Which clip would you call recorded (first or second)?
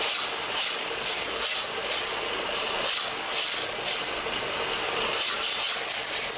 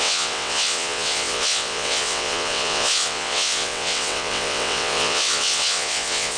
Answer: first